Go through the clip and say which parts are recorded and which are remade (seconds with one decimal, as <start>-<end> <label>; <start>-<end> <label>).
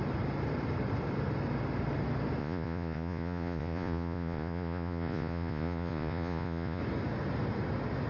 0.0-2.4 recorded; 2.4-6.8 remade; 6.8-8.1 recorded